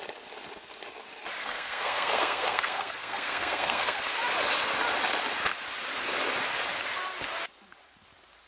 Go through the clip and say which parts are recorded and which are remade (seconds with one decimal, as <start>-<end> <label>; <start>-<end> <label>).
0.0-1.4 recorded; 1.4-4.0 remade; 4.0-8.5 recorded